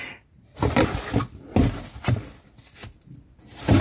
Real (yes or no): yes